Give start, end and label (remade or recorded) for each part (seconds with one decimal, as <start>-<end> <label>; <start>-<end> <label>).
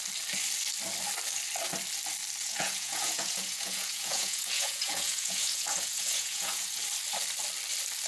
0.0-2.4 recorded; 2.4-6.8 remade; 6.8-8.1 recorded